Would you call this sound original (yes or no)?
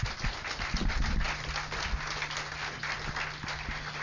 yes